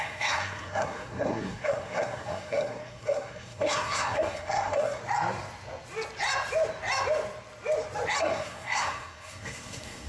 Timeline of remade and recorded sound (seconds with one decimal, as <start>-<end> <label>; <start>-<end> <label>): 0.0-5.0 remade; 5.0-8.2 recorded; 8.2-10.1 remade

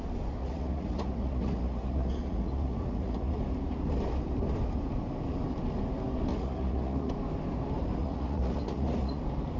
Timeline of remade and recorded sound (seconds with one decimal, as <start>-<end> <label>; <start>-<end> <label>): 0.0-0.4 recorded; 0.4-3.4 remade; 3.4-6.3 recorded; 6.3-7.1 remade; 7.1-8.0 recorded; 8.0-9.2 remade; 9.2-9.6 recorded

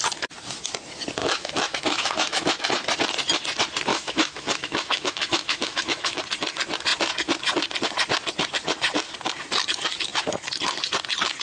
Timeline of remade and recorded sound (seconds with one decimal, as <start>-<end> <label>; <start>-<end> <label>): 0.0-1.2 recorded; 1.2-2.7 remade; 2.7-3.9 recorded; 3.9-6.2 remade; 6.2-11.4 recorded

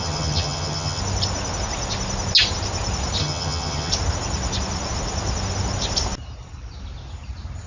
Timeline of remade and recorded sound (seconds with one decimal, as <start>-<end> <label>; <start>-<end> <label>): 0.0-1.0 remade; 1.0-3.2 recorded; 3.2-3.9 remade; 3.9-7.7 recorded

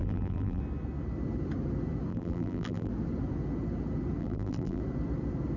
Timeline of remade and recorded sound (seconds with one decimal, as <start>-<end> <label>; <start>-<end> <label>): 0.0-0.6 remade; 0.6-2.1 recorded; 2.1-2.9 remade; 2.9-4.2 recorded; 4.2-4.8 remade; 4.8-5.6 recorded

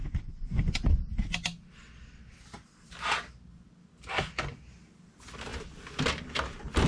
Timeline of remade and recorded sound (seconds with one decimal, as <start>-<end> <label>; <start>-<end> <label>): 0.0-1.0 remade; 1.0-6.9 recorded

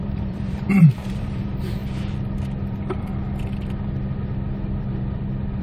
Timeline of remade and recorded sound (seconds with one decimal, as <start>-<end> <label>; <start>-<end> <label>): 0.0-1.8 remade; 1.8-2.7 recorded; 2.7-3.1 remade; 3.1-5.6 recorded

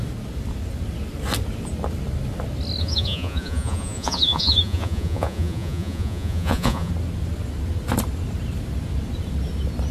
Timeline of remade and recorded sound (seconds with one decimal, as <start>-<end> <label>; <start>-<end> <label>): 0.0-2.8 recorded; 2.8-6.9 remade; 6.9-9.9 recorded